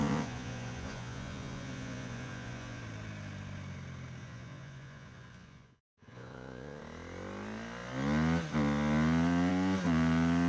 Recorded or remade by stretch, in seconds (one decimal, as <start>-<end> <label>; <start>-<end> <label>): 0.0-2.8 remade; 2.8-4.2 recorded; 4.2-6.8 remade; 6.8-10.5 recorded